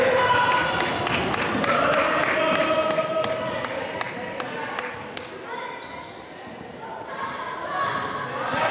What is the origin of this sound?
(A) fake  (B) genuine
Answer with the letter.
B